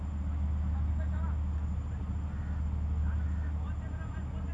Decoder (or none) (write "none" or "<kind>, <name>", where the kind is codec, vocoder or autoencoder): none